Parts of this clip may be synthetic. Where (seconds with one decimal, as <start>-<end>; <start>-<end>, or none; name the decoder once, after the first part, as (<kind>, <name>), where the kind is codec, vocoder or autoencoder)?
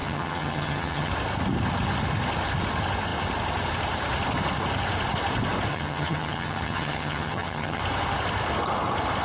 0.0-1.1 (vocoder, HiFi-GAN); 5.7-7.8